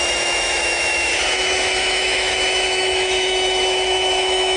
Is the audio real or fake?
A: fake